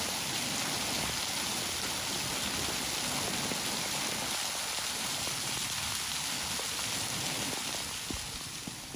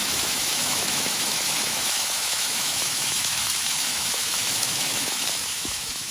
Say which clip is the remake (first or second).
second